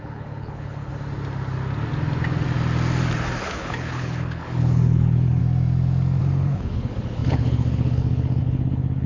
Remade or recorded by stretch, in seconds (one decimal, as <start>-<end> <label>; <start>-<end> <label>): 0.0-0.9 remade; 0.9-3.4 recorded; 3.4-5.4 remade; 5.4-6.2 recorded; 6.2-9.1 remade

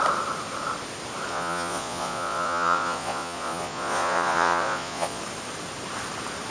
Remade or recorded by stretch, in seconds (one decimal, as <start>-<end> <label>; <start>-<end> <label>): 0.0-1.3 recorded; 1.3-5.2 remade; 5.2-6.5 recorded

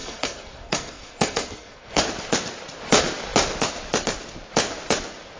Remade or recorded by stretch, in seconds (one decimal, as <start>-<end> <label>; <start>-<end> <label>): 0.0-2.0 remade; 2.0-5.4 recorded

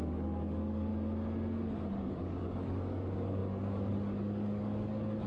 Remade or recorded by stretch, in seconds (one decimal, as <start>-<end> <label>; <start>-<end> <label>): 0.0-0.9 remade; 0.9-1.9 recorded; 1.9-5.3 remade